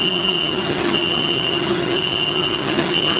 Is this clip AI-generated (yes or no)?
yes